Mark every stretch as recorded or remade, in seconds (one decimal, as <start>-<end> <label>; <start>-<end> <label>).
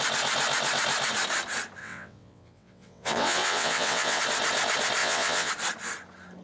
0.0-1.8 recorded; 1.8-4.2 remade; 4.2-5.0 recorded; 5.0-5.5 remade; 5.5-6.4 recorded